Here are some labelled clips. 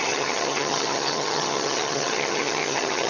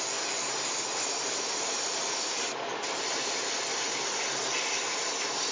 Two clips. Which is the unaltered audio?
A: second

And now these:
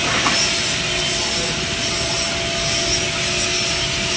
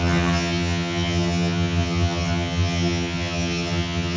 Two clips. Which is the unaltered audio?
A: first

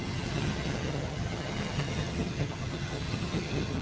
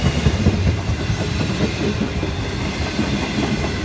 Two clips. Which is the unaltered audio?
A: second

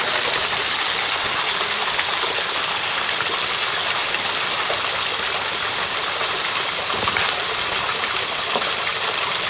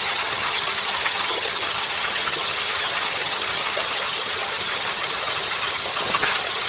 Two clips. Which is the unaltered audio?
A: first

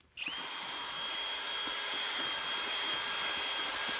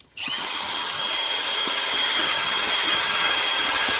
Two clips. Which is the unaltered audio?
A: first